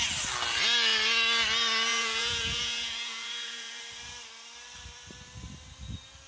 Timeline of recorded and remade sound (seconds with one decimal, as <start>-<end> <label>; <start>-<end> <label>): 0.0-1.9 recorded; 1.9-3.8 remade; 3.8-6.3 recorded